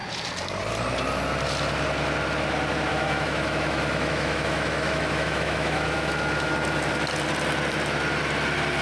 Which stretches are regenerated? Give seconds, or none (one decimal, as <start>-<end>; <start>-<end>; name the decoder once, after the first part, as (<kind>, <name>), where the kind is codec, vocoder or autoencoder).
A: 2.9-6.5 (autoencoder, DAC-VAE)